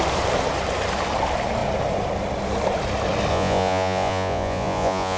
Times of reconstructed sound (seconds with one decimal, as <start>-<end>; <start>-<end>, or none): 3.3-5.2